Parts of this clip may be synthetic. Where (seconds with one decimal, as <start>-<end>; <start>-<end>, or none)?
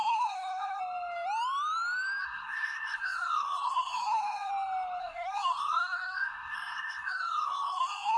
0.0-0.8; 2.2-4.5; 5.0-8.2